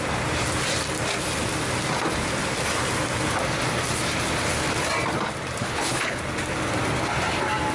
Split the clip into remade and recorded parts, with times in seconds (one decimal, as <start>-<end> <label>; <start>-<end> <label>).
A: 0.0-5.6 recorded; 5.6-6.2 remade; 6.2-7.7 recorded